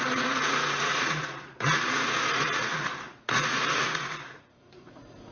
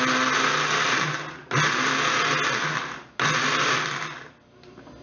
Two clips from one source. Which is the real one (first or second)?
second